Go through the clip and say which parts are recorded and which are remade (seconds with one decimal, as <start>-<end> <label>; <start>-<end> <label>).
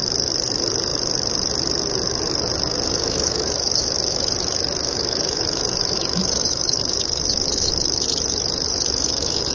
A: 0.0-9.5 remade